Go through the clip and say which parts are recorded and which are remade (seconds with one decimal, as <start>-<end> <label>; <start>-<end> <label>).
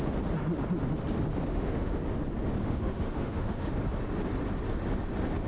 0.0-1.5 recorded; 1.5-2.0 remade; 2.0-2.6 recorded; 2.6-3.7 remade; 3.7-5.5 recorded